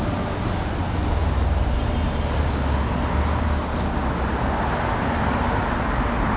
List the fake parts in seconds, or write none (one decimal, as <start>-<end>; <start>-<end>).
none